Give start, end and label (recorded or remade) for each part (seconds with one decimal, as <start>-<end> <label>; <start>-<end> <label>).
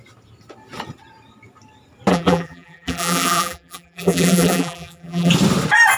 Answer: 0.0-2.1 recorded; 2.1-5.3 remade; 5.3-6.0 recorded